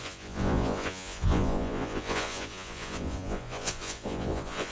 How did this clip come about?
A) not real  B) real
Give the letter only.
A